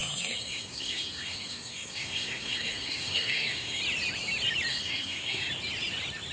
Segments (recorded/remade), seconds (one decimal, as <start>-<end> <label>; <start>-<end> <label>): 0.0-3.8 remade; 3.8-4.7 recorded; 4.7-5.5 remade; 5.5-6.3 recorded